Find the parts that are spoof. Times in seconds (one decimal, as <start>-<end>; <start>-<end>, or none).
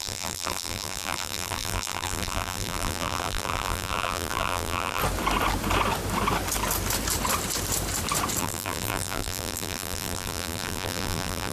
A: 0.0-5.0; 8.4-11.5